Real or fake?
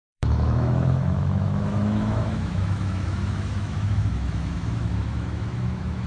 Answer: fake